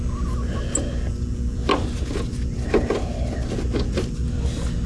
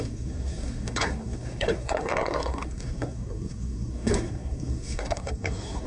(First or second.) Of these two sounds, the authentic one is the first